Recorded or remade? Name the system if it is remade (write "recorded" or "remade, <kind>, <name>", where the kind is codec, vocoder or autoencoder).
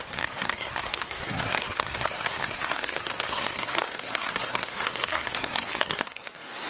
remade, codec, SNAC